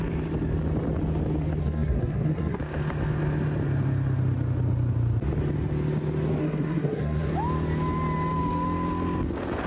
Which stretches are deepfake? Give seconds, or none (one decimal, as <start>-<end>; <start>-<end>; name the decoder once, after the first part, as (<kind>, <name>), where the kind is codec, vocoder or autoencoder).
1.6-2.6 (codec, SNAC); 6.4-7.3